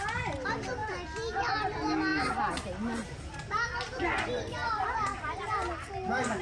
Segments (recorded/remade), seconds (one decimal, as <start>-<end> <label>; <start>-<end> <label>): 0.0-6.4 recorded